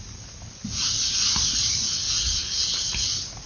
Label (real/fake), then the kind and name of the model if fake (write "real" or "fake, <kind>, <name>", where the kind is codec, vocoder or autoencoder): real